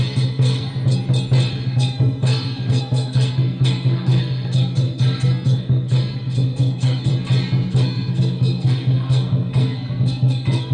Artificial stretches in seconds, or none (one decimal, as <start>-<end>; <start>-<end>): 0.0-0.7; 1.5-7.1; 7.7-10.7